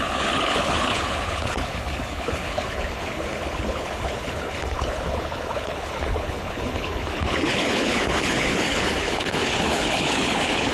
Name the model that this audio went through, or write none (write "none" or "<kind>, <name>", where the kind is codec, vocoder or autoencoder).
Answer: codec, HILCodec